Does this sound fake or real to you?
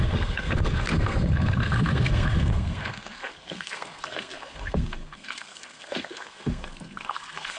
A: fake